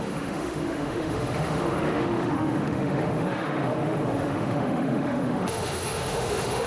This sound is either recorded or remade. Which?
remade